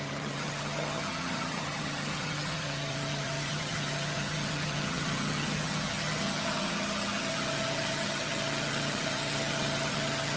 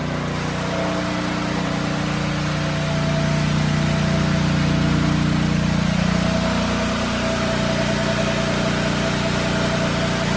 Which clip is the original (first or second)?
second